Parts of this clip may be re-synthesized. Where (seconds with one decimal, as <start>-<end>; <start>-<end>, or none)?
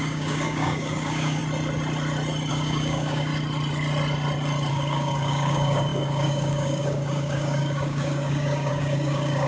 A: 0.0-1.4; 2.5-3.3; 4.7-9.5